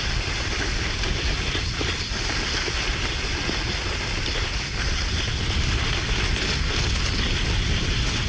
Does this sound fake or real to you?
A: real